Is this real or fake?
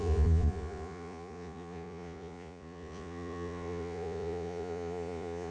fake